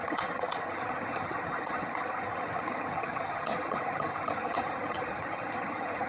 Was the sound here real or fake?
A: fake